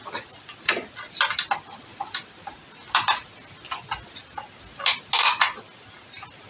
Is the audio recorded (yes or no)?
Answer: yes